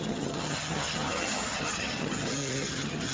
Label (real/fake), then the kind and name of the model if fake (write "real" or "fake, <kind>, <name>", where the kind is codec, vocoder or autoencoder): fake, vocoder, HiFi-GAN